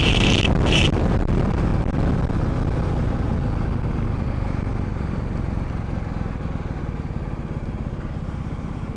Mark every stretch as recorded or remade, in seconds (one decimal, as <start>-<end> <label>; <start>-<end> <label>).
0.0-1.7 remade; 1.7-6.8 recorded; 6.8-9.0 remade